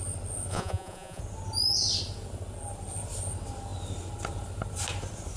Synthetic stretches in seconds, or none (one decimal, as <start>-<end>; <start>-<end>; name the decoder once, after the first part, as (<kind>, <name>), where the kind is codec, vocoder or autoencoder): 0.5-1.2 (vocoder, Vocos)